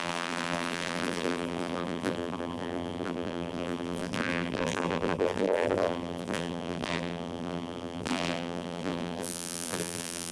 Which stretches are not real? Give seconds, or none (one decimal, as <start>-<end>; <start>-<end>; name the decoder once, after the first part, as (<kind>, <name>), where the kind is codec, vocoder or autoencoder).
0.0-10.3 (vocoder, BigVGAN v2)